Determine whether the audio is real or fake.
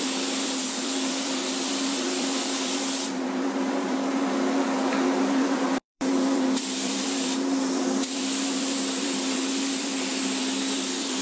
fake